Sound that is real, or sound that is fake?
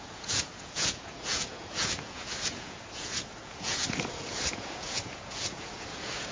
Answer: fake